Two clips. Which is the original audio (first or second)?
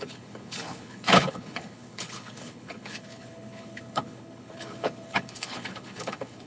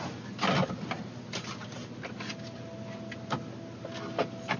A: second